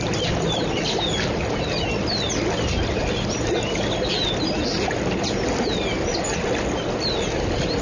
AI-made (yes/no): no